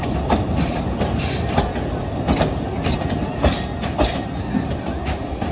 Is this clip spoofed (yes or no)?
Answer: no